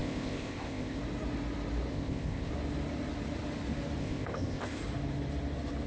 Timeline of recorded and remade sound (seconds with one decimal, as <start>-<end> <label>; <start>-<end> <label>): 0.0-1.0 remade; 1.0-1.9 recorded; 1.9-2.5 remade; 2.5-4.0 recorded; 4.0-4.8 remade; 4.8-5.9 recorded